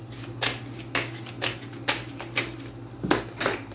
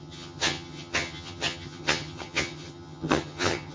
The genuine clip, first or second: first